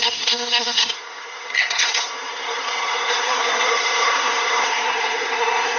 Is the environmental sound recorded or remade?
remade